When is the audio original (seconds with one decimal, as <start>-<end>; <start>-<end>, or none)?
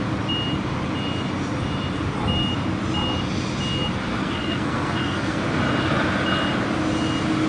0.0-4.1; 5.4-7.5